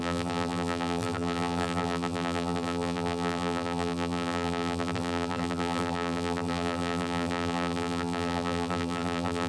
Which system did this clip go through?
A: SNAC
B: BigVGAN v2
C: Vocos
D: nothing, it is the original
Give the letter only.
B